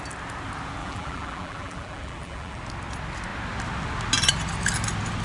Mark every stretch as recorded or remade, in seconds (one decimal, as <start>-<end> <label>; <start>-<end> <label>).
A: 0.0-0.8 recorded; 0.8-2.6 remade; 2.6-5.2 recorded